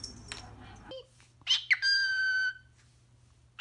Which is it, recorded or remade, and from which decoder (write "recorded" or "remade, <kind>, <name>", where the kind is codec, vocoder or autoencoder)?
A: recorded